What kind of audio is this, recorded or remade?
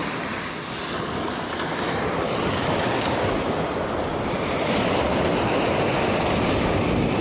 recorded